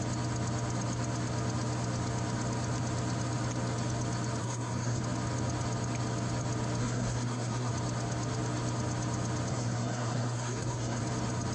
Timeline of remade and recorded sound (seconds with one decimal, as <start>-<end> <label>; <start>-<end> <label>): 0.0-4.4 recorded; 4.4-5.0 remade; 5.0-6.8 recorded; 6.8-7.7 remade; 7.7-9.5 recorded; 9.5-11.0 remade; 11.0-11.5 recorded